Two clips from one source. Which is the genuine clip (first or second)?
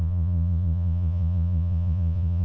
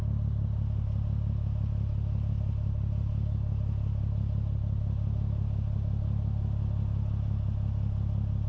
second